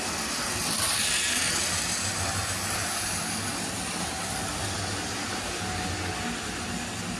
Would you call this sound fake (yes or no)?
no